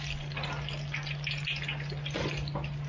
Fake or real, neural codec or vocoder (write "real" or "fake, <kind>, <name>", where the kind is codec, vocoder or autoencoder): real